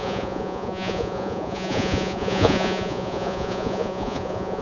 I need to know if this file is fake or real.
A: fake